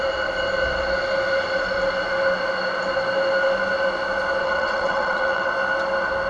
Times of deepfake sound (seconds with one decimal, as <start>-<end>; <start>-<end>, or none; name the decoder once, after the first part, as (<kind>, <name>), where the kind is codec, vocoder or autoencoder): 4.4-5.5 (vocoder, WaveNeXt)